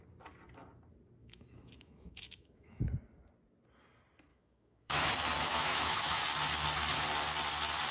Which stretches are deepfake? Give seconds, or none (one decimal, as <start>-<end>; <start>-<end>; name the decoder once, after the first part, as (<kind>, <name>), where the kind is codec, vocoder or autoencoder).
1.2-2.8 (autoencoder, DAC-VAE); 4.3-5.1; 5.5-6.2

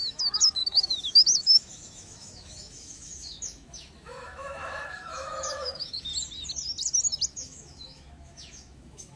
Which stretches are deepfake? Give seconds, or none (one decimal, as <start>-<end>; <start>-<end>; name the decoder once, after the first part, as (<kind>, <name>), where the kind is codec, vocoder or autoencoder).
0.0-6.1 (autoencoder, DAC-VAE); 7.3-9.2

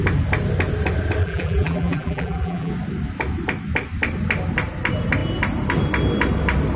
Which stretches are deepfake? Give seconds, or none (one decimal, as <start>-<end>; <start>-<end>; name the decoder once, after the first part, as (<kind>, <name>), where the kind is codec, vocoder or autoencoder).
1.2-2.7 (vocoder, BigVGAN v2)

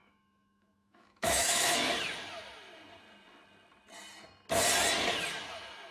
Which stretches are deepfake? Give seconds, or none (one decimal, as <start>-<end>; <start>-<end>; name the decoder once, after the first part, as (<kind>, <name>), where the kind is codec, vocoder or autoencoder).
0.0-1.9 (autoencoder, DAC-VAE)

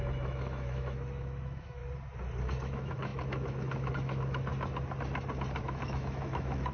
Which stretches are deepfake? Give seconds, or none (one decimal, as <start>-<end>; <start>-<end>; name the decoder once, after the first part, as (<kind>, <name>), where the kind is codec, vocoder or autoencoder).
0.0-1.8 (autoencoder, DAC-VAE); 2.4-4.5; 5.6-6.7

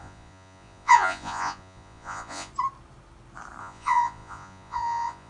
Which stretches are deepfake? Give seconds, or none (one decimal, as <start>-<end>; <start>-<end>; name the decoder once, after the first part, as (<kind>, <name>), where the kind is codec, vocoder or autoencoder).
0.0-2.5 (vocoder, Vocos); 3.6-5.3